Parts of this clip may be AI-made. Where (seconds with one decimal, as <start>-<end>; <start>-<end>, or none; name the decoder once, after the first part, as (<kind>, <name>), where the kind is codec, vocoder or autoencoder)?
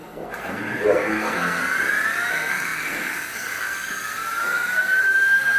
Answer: 0.0-1.6 (codec, SNAC); 2.3-5.6